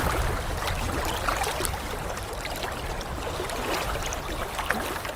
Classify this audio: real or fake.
real